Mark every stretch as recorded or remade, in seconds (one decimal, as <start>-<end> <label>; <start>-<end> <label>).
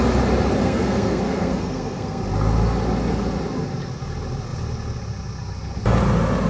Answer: 0.0-0.6 recorded; 0.6-2.2 remade; 2.2-6.5 recorded